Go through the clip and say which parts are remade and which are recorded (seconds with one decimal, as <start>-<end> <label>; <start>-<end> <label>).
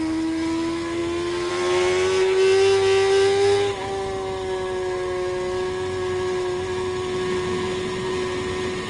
0.0-8.9 recorded